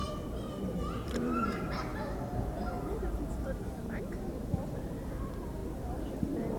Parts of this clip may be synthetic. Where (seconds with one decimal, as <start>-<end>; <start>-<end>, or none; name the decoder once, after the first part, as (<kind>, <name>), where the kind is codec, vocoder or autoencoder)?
0.0-1.9 (vocoder, BigVGAN v2); 2.8-6.6